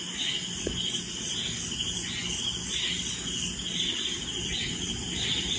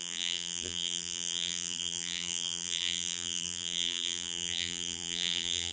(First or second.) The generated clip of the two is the second